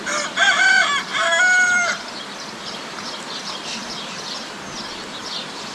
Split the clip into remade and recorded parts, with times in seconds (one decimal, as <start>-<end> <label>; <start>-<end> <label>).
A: 0.0-1.1 recorded; 1.1-3.4 remade; 3.4-5.7 recorded